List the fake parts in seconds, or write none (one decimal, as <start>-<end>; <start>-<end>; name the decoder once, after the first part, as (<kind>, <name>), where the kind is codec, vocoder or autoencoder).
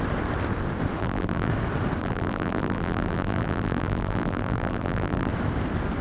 1.0-1.5 (vocoder, BigVGAN v2); 2.0-5.3